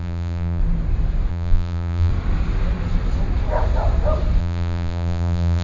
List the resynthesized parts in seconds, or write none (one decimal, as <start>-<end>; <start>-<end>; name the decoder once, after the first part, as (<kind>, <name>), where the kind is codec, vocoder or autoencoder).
0.0-0.6 (vocoder, BigVGAN v2); 1.3-2.1; 4.4-5.6